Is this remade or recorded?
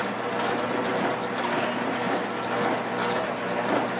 recorded